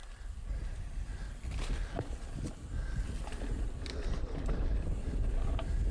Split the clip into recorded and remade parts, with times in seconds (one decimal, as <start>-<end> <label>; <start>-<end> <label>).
0.0-5.9 recorded